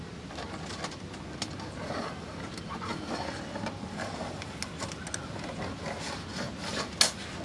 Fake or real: real